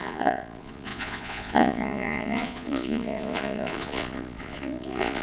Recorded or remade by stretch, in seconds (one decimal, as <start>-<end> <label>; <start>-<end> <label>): 0.0-5.2 remade